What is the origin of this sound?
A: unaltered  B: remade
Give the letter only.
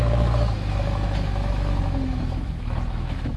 B